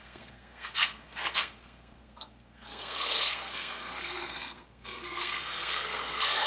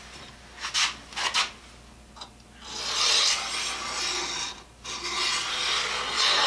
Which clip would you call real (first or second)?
second